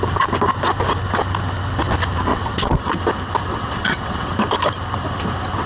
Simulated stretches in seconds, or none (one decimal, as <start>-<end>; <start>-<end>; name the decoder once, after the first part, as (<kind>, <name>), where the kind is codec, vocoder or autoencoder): 2.3-2.9 (vocoder, WaveNeXt); 3.5-4.3